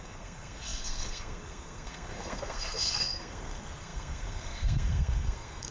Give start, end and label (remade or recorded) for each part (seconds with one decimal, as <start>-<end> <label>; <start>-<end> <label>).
0.0-5.7 remade